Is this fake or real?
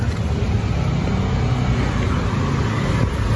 real